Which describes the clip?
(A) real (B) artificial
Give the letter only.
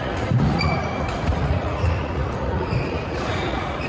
B